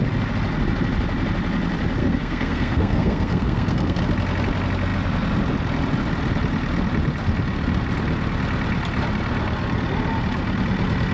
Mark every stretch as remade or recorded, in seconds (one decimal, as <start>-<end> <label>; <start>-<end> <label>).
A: 0.0-2.0 recorded; 2.0-4.0 remade; 4.0-11.1 recorded